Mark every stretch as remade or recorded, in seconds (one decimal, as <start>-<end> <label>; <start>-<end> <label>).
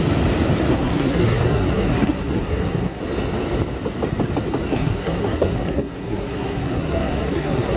0.0-0.7 recorded; 0.7-3.0 remade; 3.0-4.7 recorded; 4.7-7.8 remade